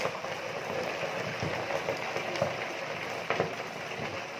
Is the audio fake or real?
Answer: real